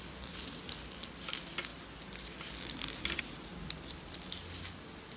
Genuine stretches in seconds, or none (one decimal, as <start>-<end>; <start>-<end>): 0.0-5.2